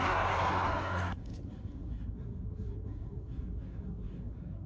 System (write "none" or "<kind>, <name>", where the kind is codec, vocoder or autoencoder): codec, SNAC